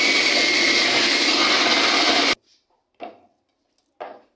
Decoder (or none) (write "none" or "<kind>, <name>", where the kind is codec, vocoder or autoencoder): none